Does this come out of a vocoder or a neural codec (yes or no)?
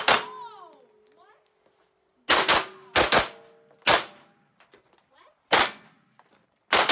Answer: no